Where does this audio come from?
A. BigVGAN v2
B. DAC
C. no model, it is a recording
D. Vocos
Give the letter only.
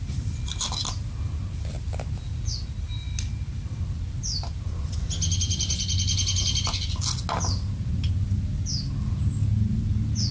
C